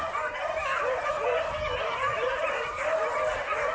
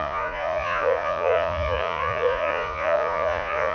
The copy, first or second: second